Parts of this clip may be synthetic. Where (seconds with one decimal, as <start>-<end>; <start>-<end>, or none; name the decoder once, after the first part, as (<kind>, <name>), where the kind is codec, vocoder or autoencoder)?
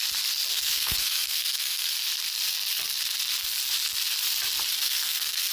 0.5-1.9 (codec, SNAC); 4.8-5.5